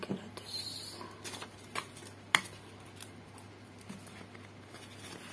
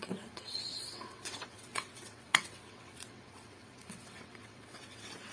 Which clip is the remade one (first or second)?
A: second